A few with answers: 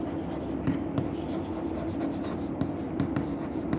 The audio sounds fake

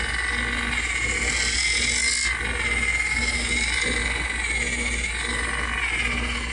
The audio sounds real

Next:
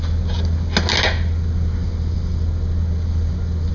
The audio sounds real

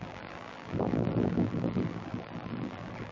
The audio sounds fake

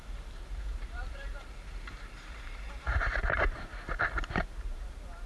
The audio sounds fake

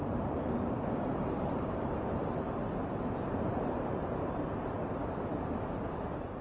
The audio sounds fake